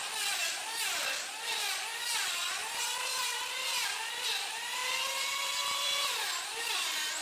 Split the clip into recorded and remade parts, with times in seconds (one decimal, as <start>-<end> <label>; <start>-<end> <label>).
0.0-0.4 remade; 0.4-1.2 recorded; 1.2-7.2 remade